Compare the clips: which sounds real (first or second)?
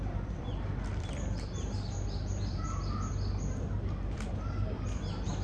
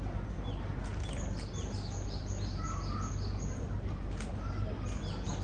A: second